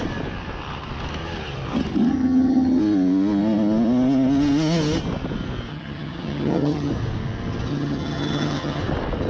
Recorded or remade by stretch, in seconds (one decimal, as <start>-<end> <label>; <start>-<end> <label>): 0.0-2.1 recorded; 2.1-2.8 remade; 2.8-5.7 recorded; 5.7-6.9 remade; 6.9-7.7 recorded; 7.7-8.8 remade; 8.8-9.3 recorded